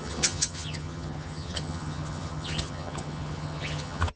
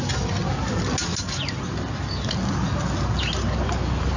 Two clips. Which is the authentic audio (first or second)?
second